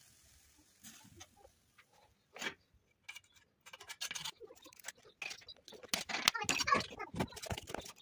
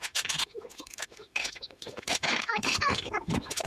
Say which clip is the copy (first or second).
second